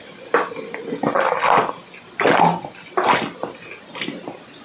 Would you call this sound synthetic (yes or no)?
no